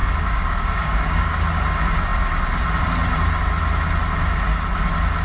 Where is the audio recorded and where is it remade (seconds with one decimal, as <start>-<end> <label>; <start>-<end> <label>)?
0.0-1.4 remade; 1.4-5.2 recorded